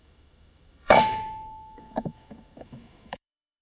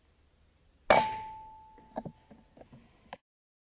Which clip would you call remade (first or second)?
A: first